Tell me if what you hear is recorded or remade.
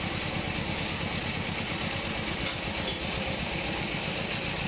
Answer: recorded